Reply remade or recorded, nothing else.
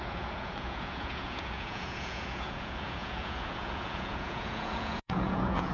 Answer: remade